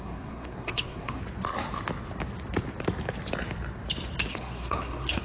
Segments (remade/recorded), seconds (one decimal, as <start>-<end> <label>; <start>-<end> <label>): 0.0-1.2 remade; 1.2-4.3 recorded; 4.3-5.2 remade